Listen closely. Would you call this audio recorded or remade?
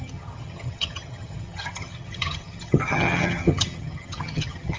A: remade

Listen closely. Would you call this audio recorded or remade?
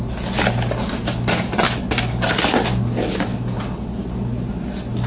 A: recorded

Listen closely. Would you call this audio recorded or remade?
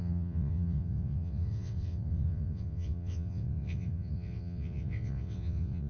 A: remade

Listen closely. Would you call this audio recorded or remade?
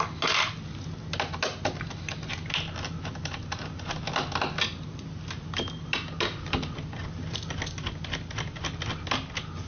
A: recorded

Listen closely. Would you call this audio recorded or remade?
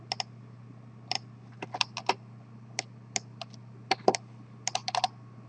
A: recorded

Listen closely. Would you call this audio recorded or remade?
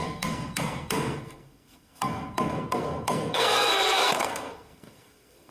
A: remade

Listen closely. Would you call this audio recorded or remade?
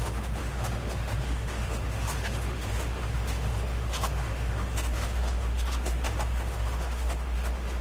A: remade